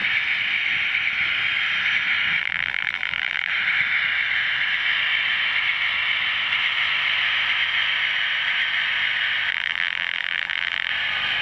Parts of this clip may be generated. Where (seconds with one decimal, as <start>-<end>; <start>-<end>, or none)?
2.4-3.5; 9.5-10.9